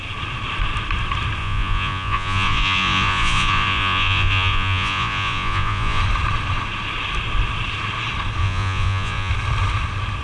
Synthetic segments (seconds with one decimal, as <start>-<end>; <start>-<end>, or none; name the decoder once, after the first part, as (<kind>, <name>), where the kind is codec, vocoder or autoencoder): 1.4-6.0 (vocoder, Vocos); 8.4-9.3